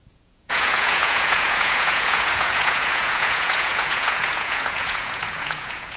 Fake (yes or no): yes